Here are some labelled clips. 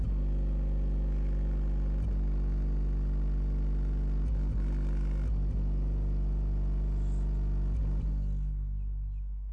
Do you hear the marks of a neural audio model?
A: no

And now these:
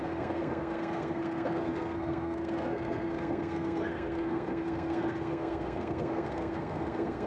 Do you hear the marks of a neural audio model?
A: yes